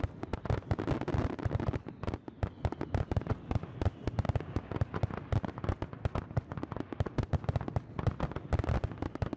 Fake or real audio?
real